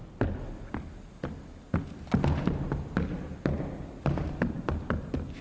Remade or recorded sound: recorded